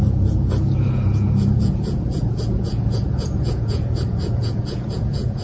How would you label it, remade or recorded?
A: remade